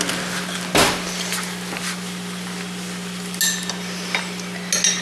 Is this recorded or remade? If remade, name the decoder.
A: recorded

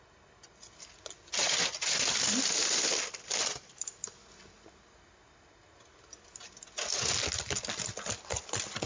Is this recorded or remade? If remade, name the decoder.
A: recorded